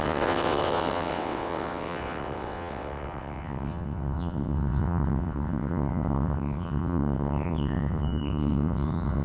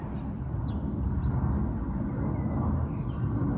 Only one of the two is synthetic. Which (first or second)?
first